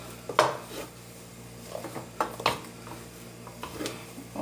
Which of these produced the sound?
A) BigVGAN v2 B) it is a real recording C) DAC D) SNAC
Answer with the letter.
B